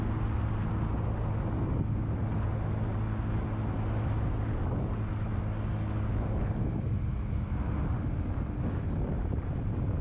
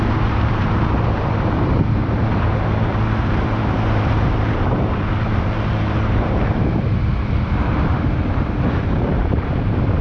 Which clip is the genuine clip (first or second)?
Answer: first